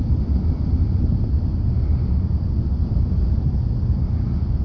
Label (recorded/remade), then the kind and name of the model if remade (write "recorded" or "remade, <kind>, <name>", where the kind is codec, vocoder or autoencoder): recorded